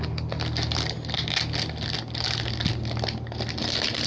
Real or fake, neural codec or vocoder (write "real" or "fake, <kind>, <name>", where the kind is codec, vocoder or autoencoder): real